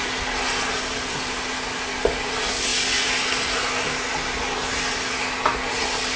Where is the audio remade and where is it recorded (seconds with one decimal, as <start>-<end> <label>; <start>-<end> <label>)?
0.0-6.2 recorded